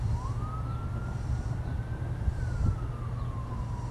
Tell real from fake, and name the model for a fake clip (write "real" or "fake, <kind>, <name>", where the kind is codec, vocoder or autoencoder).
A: real